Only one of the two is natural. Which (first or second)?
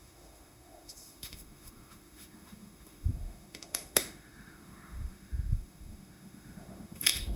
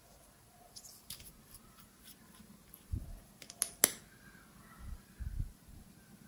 second